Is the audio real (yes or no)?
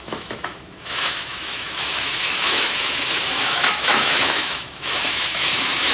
no